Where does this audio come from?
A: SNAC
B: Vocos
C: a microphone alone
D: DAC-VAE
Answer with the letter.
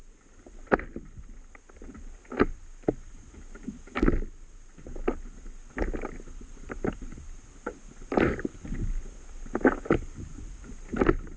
C